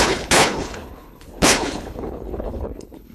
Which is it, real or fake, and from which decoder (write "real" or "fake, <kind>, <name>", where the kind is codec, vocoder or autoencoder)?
fake, codec, HILCodec